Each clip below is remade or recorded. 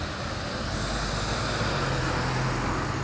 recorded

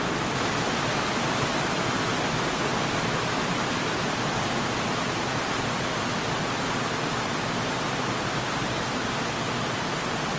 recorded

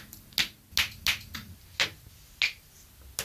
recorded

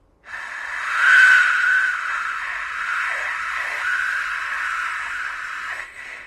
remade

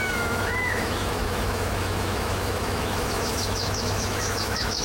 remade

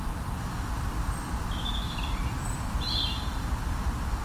recorded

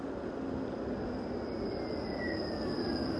recorded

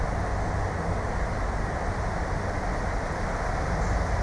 recorded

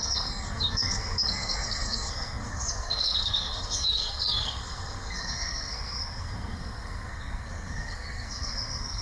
remade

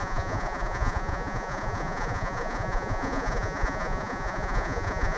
remade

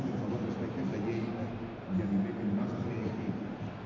recorded